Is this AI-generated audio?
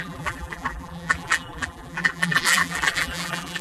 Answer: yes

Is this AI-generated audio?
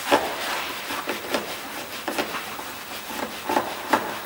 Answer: yes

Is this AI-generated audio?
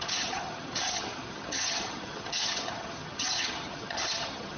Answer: yes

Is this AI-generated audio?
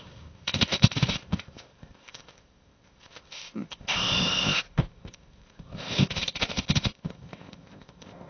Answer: yes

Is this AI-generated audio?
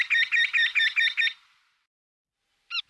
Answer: no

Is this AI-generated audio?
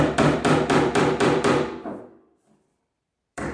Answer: yes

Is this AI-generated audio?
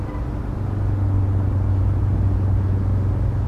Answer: no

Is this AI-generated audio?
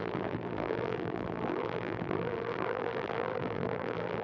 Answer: yes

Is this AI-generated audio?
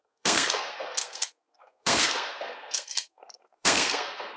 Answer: yes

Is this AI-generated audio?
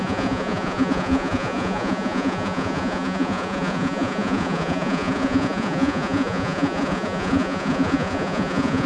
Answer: yes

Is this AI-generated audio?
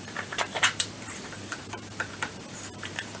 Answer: yes